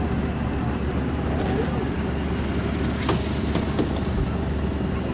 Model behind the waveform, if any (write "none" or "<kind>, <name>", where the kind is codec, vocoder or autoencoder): none